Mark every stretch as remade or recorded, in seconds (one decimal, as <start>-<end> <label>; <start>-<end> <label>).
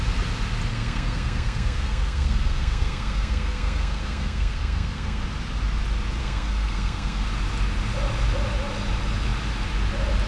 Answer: 0.0-0.7 recorded; 0.7-5.2 remade; 5.2-6.2 recorded; 6.2-7.3 remade; 7.3-10.3 recorded